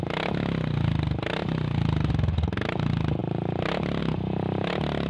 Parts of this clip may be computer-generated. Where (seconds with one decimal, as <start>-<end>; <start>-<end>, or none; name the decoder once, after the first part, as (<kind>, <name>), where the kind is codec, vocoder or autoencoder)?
none